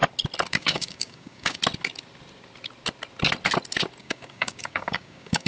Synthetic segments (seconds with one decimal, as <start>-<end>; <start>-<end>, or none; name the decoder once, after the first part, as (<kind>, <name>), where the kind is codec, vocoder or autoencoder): 0.5-1.6 (codec, DAC); 4.0-5.5